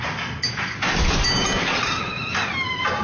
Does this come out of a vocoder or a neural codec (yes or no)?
no